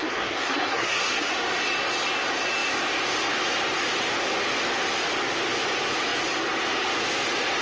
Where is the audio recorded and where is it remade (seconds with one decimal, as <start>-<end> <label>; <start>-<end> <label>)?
0.0-1.3 remade; 1.3-7.6 recorded